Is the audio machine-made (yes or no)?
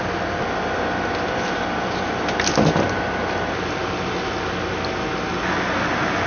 no